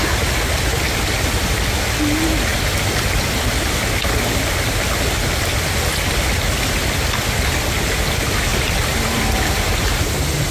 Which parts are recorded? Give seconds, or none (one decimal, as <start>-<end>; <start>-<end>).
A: 0.0-8.5; 10.1-10.5